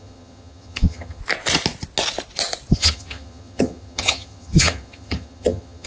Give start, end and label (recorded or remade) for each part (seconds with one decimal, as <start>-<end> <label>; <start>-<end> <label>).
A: 0.0-1.2 remade; 1.2-2.7 recorded; 2.7-5.9 remade